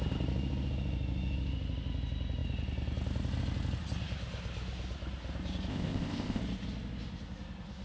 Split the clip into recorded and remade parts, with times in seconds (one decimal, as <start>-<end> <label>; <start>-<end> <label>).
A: 0.0-5.7 recorded; 5.7-6.4 remade; 6.4-7.8 recorded